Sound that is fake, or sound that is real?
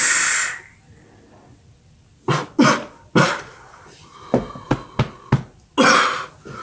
real